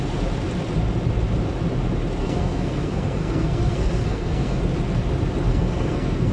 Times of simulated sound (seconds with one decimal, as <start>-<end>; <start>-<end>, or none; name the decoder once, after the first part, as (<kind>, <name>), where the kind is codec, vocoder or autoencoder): 2.2-4.6 (codec, SNAC); 5.5-6.3